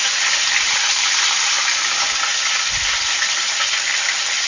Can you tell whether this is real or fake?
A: real